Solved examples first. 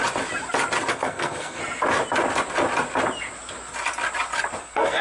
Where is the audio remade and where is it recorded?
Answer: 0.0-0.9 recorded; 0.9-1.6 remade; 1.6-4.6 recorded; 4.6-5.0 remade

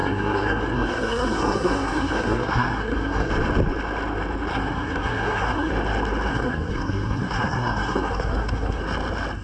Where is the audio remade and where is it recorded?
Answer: 0.0-3.3 remade; 3.3-4.5 recorded; 4.5-5.7 remade; 5.7-6.3 recorded; 6.3-8.8 remade; 8.8-9.4 recorded